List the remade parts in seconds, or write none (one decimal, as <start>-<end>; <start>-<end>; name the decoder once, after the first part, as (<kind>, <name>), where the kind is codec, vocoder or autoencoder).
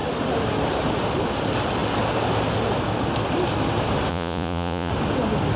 4.1-4.9 (vocoder, Vocos)